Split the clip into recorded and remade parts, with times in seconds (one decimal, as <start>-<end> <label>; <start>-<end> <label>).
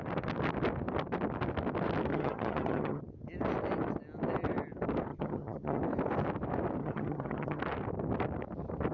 0.0-2.1 recorded; 2.1-3.0 remade; 3.0-5.1 recorded; 5.1-5.8 remade; 5.8-6.8 recorded; 6.8-7.6 remade; 7.6-8.9 recorded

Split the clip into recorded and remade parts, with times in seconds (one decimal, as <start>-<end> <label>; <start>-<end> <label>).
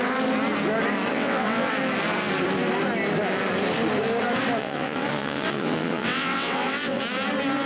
0.0-1.1 recorded; 1.1-1.7 remade; 1.7-4.6 recorded; 4.6-7.0 remade; 7.0-7.7 recorded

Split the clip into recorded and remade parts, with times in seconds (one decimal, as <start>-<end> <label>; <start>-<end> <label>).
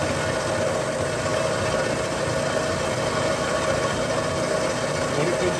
0.0-5.6 recorded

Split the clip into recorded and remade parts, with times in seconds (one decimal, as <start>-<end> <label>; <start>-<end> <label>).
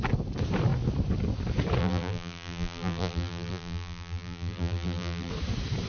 0.0-1.8 recorded; 1.8-5.3 remade; 5.3-5.9 recorded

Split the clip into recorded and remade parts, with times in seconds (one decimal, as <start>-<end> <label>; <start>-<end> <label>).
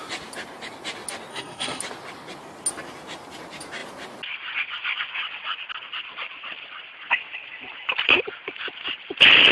0.0-1.3 recorded; 1.3-1.8 remade; 1.8-9.5 recorded